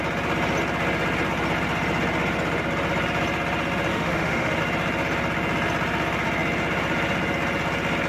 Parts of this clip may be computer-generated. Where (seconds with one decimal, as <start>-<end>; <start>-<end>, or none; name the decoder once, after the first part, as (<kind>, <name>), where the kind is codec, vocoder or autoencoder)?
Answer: 3.9-4.6 (autoencoder, DAC-VAE)